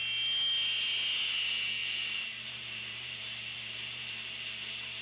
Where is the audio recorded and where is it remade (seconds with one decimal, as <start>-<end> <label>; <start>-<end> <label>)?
0.0-1.8 recorded; 1.8-5.0 remade